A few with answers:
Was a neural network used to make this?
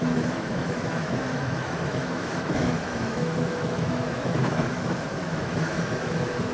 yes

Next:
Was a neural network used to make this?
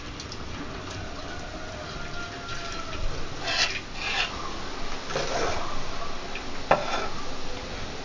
no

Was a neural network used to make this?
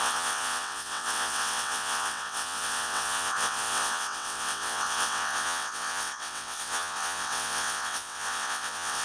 yes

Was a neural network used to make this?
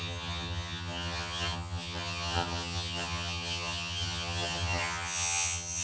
yes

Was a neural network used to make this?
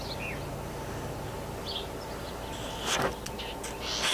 no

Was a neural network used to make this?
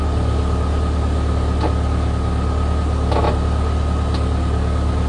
no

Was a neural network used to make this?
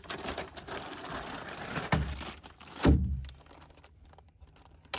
no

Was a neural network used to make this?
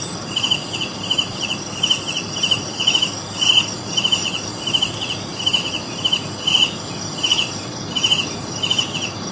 no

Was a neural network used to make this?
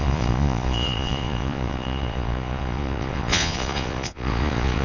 yes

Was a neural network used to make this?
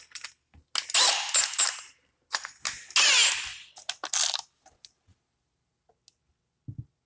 no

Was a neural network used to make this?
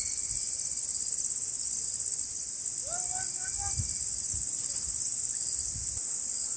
no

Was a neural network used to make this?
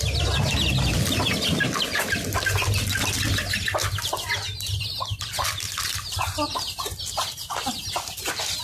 no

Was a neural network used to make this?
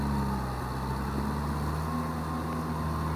no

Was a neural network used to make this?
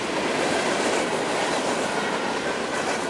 yes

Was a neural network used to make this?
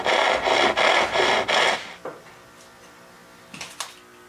no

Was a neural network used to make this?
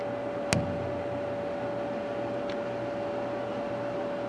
no